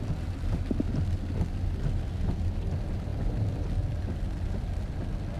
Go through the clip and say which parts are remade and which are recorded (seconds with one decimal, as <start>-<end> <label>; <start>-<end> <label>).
0.0-5.4 recorded